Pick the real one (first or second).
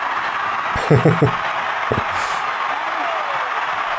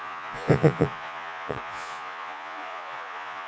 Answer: first